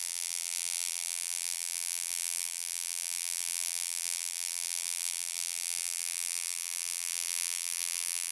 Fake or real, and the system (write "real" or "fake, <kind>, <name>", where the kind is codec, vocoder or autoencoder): fake, vocoder, BigVGAN v2